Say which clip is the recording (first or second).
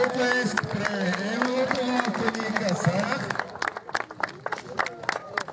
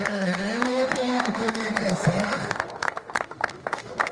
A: first